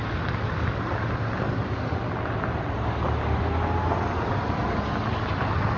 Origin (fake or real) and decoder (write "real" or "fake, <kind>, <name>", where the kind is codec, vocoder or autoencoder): real